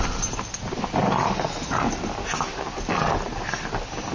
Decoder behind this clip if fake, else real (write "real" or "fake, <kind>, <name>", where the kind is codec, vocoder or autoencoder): real